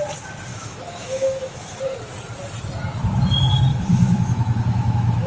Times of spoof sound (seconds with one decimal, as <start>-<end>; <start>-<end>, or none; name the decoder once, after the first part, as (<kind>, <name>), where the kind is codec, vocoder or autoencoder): 0.5-1.8 (autoencoder, DAC-VAE); 3.7-5.3